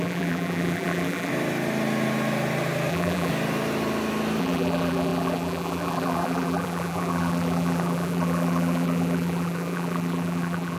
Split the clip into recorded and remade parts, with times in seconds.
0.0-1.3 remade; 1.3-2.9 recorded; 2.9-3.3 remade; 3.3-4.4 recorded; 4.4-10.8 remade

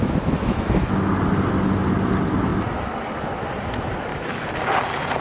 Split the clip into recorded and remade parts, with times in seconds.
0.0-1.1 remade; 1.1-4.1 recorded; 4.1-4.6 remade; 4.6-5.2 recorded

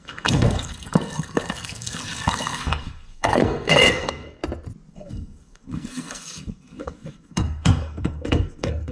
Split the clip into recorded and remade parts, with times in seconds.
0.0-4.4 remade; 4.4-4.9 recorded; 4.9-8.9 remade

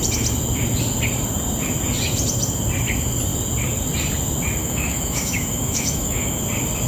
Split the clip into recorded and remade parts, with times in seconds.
0.0-4.6 recorded; 4.6-6.4 remade; 6.4-6.9 recorded

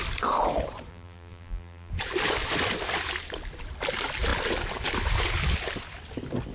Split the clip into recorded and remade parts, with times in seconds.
0.0-0.9 recorded; 0.9-1.9 remade; 1.9-6.5 recorded

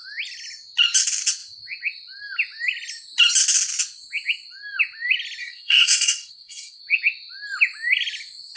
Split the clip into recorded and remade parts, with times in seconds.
0.0-5.4 recorded; 5.4-6.8 remade; 6.8-8.6 recorded

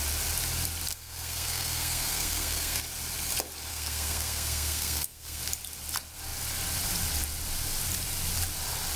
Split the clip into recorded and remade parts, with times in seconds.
0.0-0.9 recorded; 0.9-2.8 remade; 2.8-3.7 recorded; 3.7-5.4 remade; 5.4-9.0 recorded